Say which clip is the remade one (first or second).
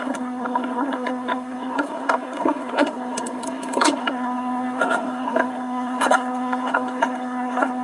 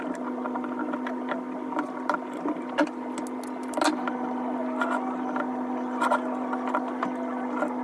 first